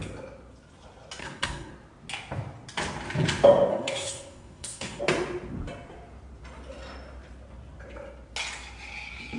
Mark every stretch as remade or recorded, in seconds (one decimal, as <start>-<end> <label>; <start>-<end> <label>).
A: 0.0-1.2 recorded; 1.2-1.7 remade; 1.7-3.7 recorded; 3.7-5.0 remade; 5.0-9.4 recorded